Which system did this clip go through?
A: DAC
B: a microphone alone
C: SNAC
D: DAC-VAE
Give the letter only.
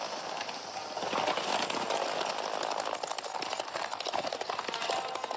B